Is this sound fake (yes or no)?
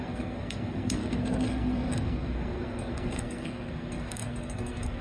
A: yes